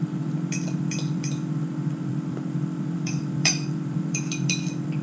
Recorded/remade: remade